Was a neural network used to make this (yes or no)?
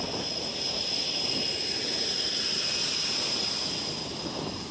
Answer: no